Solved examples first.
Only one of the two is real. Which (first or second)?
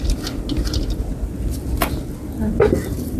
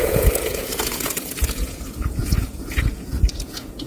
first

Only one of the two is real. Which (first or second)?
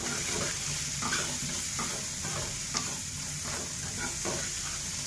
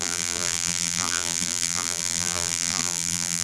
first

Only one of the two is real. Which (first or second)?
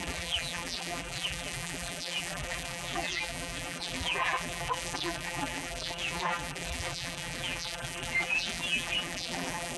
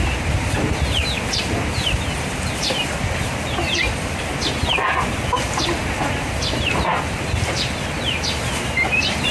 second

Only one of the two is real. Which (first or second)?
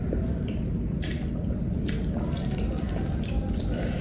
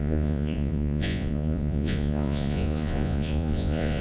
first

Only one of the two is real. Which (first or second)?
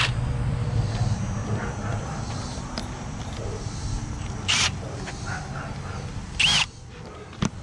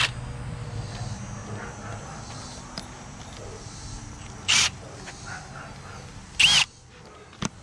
second